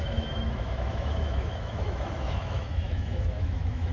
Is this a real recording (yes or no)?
no